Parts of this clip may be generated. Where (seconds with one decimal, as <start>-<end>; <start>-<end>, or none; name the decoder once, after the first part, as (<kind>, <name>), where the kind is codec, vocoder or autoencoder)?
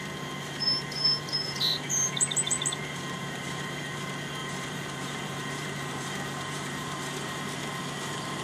1.1-4.0 (vocoder, BigVGAN v2); 4.4-7.4